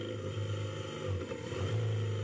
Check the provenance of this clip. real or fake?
real